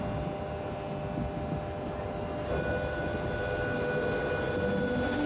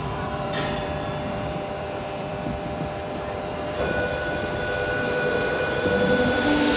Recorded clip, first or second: first